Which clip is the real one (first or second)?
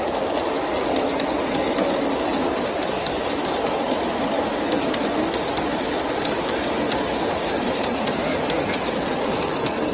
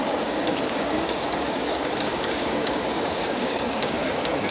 first